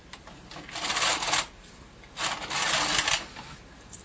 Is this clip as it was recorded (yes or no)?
yes